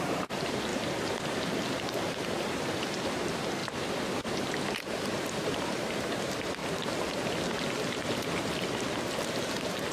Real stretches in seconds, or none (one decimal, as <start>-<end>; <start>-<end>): 6.6-9.3